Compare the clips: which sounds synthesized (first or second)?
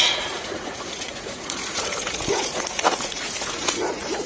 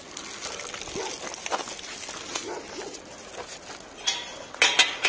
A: first